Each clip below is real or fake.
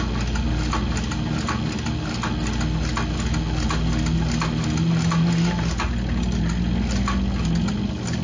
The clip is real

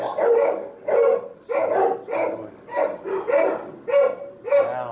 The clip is real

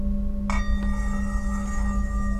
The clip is real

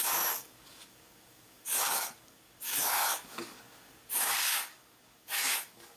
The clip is fake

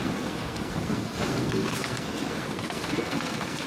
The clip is fake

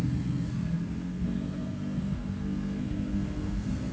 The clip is fake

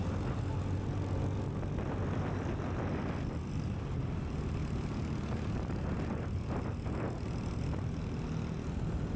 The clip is real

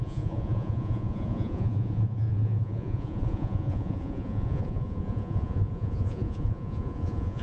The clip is fake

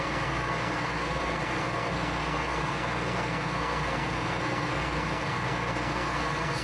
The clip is fake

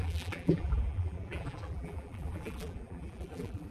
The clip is fake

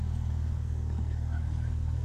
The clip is fake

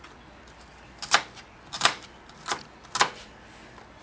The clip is real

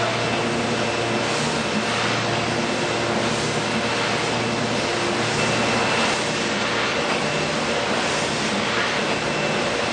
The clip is real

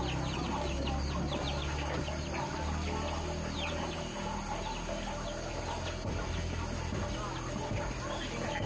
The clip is fake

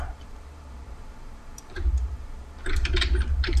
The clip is fake